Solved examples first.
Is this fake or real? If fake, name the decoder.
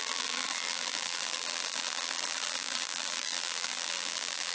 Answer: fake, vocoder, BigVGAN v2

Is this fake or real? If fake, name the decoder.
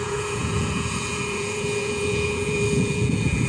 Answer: fake, vocoder, Vocos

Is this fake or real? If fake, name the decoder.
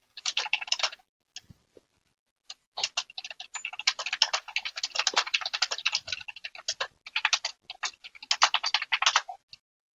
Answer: real